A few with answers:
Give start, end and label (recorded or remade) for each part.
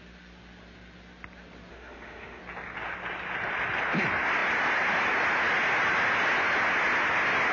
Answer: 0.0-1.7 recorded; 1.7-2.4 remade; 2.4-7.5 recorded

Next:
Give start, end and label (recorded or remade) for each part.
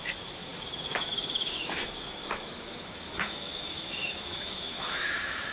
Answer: 0.0-5.5 remade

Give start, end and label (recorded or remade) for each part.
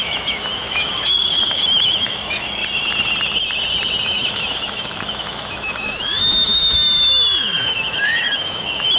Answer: 0.0-2.6 remade; 2.6-4.0 recorded; 4.0-9.0 remade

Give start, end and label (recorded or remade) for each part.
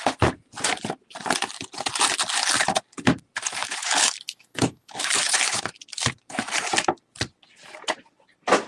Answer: 0.0-3.6 recorded; 3.6-5.6 remade; 5.6-8.7 recorded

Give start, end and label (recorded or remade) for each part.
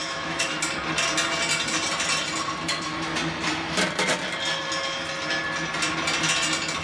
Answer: 0.0-0.6 remade; 0.6-6.8 recorded